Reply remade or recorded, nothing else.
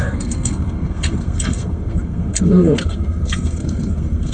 remade